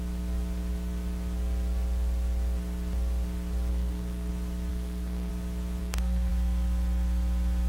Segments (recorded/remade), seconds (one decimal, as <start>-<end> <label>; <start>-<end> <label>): 0.0-3.7 recorded; 3.7-4.3 remade; 4.3-4.7 recorded; 4.7-5.3 remade; 5.3-5.8 recorded; 5.8-6.3 remade; 6.3-7.7 recorded